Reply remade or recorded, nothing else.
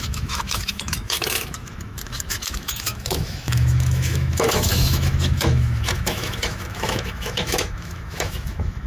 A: remade